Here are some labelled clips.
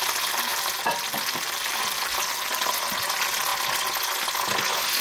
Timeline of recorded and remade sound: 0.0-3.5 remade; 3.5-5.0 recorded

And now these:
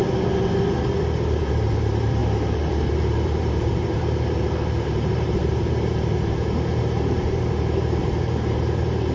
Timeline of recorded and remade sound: 0.0-1.2 recorded; 1.2-9.1 remade

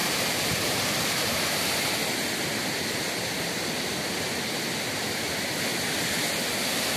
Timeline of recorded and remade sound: 0.0-1.5 remade; 1.5-7.0 recorded